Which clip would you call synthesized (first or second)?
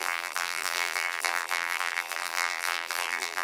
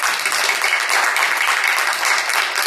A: first